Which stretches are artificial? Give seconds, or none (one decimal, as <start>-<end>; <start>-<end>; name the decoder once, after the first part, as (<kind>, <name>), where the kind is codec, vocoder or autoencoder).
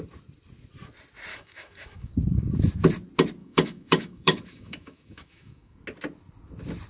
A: 1.3-2.1 (autoencoder, DAC-VAE); 3.4-5.8